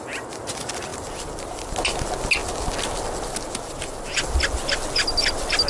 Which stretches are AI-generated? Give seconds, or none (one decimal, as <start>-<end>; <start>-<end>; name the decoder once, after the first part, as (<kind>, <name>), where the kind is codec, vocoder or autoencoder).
none